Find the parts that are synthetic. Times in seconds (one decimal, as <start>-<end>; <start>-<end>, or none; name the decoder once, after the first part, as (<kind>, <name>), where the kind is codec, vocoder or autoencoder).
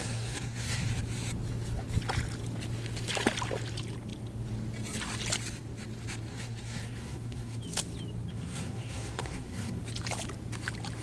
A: 0.0-0.9 (codec, SNAC); 6.3-7.6; 8.3-9.8